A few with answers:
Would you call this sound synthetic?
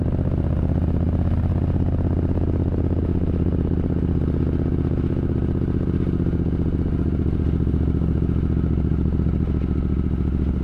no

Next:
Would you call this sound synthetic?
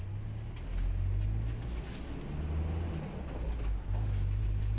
no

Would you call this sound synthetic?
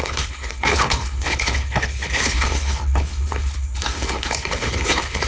yes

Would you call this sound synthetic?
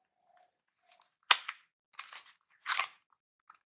no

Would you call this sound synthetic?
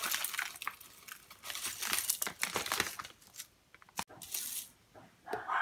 no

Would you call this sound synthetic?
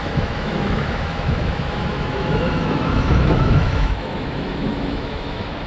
yes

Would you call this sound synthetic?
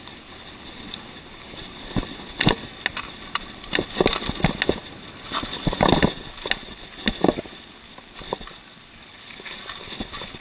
no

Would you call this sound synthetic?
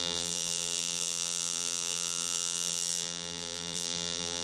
yes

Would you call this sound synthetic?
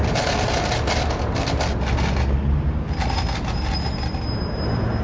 no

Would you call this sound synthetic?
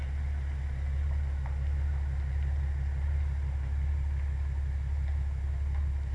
no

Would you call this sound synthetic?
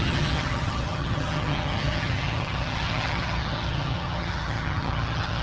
yes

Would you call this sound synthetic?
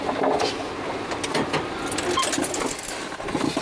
no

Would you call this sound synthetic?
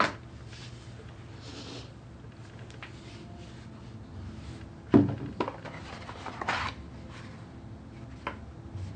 no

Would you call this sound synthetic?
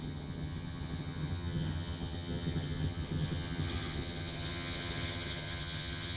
yes